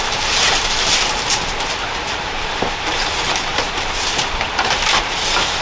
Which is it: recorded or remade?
remade